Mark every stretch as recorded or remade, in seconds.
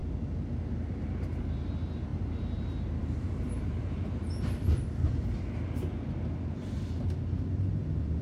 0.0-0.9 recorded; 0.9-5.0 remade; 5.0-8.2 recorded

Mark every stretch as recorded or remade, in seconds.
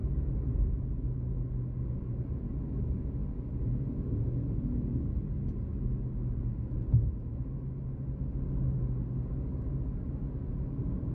0.0-11.1 recorded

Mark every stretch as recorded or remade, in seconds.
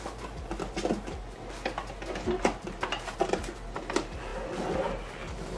0.0-5.6 recorded